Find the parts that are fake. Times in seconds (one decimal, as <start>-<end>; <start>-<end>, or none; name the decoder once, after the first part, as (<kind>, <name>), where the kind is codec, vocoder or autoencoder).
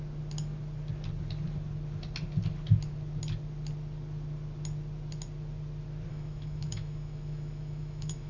6.1-8.3 (autoencoder, DAC-VAE)